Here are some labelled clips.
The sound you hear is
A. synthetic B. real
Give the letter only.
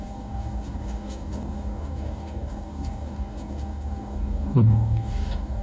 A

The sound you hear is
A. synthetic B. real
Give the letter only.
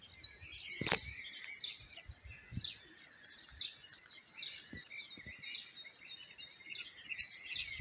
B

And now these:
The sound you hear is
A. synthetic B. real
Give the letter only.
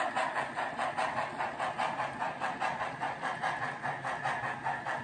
B